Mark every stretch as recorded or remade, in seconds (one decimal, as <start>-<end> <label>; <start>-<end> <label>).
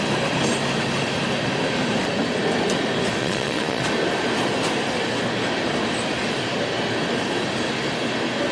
0.0-3.2 recorded; 3.2-3.8 remade; 3.8-8.5 recorded